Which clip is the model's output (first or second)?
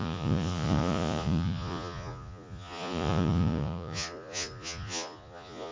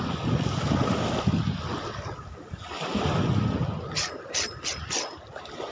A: first